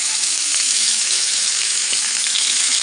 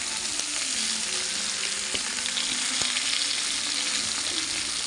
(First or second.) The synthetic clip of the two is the first